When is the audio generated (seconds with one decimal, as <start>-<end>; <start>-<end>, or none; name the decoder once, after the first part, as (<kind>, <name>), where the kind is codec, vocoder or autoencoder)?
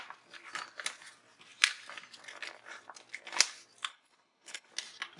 3.9-4.7 (codec, HILCodec)